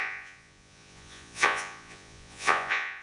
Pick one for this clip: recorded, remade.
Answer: remade